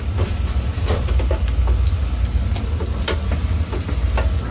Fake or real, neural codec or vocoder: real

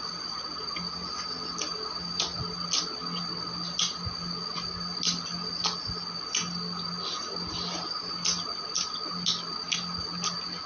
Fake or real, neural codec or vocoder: real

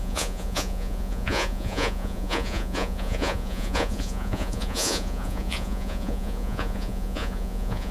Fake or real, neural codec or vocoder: fake, vocoder, Vocos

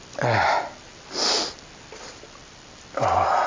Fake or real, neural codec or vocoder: real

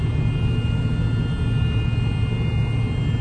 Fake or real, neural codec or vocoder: real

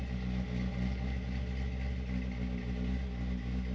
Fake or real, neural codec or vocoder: real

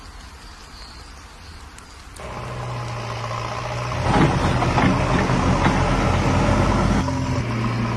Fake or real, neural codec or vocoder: real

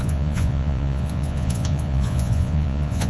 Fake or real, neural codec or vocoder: fake, vocoder, Vocos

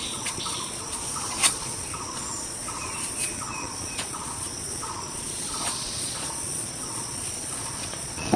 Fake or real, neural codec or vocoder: fake, vocoder, Vocos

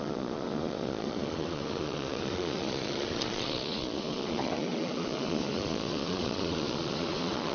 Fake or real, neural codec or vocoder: fake, vocoder, Vocos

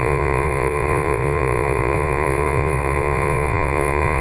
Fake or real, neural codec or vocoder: fake, vocoder, Vocos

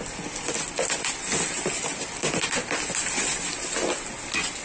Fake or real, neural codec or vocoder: real